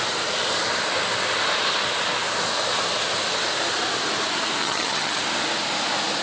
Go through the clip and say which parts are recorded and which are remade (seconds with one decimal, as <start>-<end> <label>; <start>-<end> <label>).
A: 0.0-4.6 recorded; 4.6-5.2 remade; 5.2-6.2 recorded